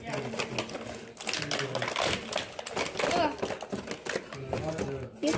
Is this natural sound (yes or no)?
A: yes